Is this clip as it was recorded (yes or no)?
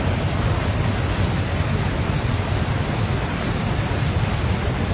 yes